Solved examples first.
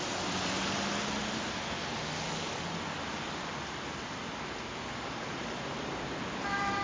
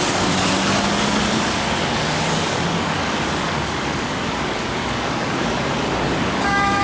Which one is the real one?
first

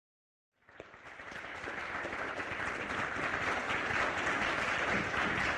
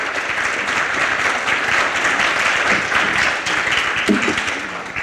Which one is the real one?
second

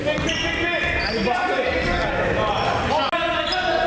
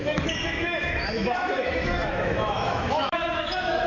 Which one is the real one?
first